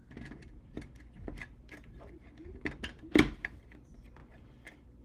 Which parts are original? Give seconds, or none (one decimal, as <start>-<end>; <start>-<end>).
0.0-5.0